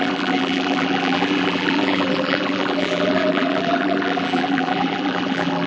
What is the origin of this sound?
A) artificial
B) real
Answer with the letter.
A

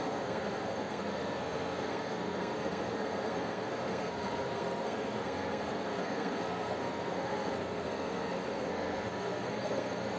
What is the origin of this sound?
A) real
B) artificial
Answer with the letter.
B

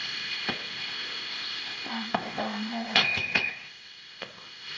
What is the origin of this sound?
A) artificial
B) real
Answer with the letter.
A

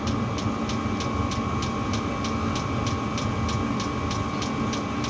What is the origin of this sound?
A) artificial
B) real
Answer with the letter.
B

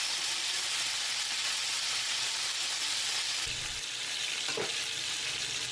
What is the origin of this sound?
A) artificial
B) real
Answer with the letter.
B